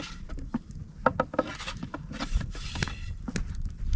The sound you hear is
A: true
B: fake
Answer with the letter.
A